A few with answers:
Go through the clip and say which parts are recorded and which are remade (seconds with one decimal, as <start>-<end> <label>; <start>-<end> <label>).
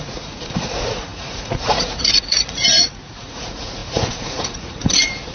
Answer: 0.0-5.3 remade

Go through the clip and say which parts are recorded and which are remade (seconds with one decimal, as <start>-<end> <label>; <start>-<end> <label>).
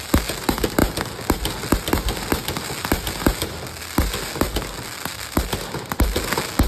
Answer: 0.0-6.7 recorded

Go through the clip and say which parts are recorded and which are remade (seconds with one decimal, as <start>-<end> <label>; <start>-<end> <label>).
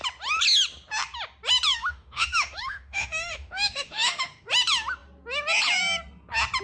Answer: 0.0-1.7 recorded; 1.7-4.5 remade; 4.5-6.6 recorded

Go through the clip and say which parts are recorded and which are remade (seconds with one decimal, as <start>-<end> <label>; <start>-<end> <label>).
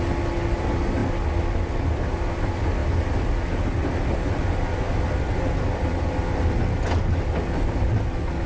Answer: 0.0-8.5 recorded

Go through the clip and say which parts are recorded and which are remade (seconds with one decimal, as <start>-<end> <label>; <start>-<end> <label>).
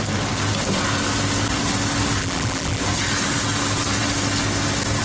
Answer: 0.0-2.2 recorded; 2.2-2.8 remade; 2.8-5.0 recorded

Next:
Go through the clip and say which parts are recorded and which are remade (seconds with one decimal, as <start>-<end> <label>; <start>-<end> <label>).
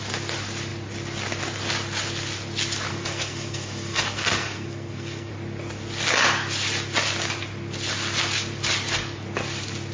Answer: 0.0-2.9 recorded; 2.9-5.3 remade; 5.3-9.9 recorded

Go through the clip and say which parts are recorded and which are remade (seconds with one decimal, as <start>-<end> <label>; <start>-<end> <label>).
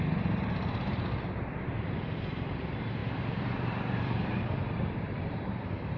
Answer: 0.0-6.0 remade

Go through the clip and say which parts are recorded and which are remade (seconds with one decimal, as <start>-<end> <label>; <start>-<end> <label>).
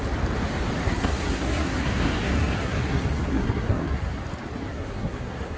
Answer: 0.0-0.8 recorded; 0.8-4.2 remade; 4.2-4.7 recorded; 4.7-5.6 remade